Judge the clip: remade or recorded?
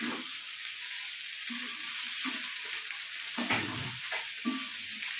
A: recorded